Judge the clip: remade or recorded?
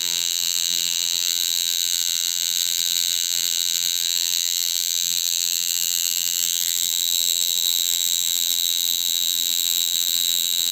remade